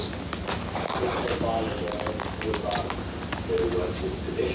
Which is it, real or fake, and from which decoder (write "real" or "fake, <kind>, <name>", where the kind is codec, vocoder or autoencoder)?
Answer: real